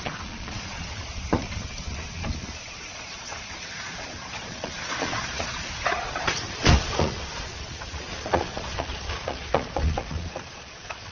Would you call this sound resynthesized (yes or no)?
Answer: yes